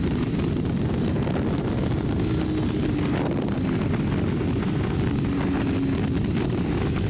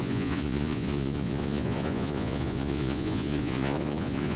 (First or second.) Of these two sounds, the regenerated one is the second